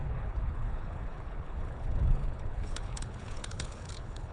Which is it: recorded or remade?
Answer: remade